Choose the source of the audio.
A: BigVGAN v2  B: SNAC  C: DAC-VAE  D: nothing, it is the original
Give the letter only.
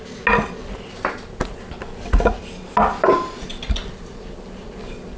D